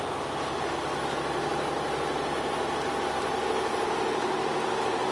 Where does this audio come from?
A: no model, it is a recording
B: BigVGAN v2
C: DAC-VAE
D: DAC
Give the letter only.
A